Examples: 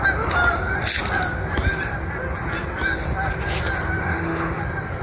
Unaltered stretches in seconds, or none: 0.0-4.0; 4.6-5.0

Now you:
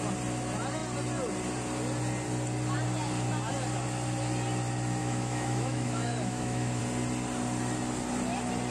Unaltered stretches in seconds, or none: 0.0-5.0; 6.8-8.7

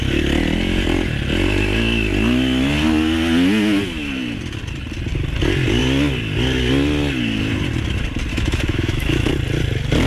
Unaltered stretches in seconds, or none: 0.0-8.3; 9.3-10.1